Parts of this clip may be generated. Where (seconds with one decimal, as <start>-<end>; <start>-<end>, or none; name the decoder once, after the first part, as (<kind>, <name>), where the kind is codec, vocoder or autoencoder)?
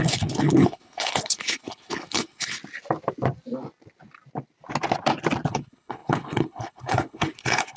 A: 0.0-2.6 (codec, HILCodec); 5.5-7.8